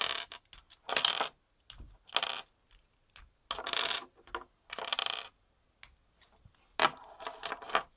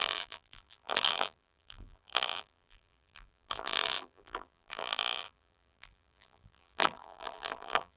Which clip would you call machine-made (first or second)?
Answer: second